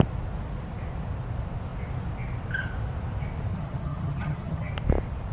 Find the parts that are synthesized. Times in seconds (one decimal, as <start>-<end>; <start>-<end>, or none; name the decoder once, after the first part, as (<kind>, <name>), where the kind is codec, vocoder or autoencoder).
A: 3.5-4.7 (vocoder, HiFi-GAN)